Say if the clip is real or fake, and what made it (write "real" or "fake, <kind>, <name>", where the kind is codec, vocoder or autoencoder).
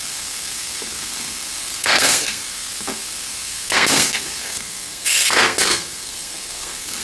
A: fake, codec, SNAC